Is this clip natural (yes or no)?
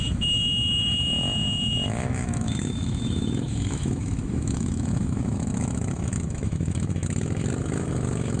no